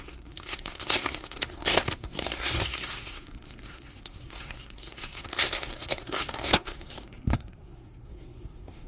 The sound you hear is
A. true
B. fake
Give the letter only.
B